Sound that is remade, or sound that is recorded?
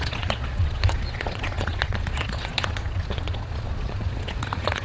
remade